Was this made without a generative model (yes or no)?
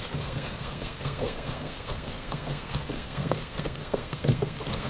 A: no